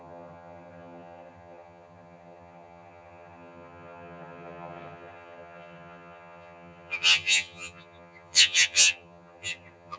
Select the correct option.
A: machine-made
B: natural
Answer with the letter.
A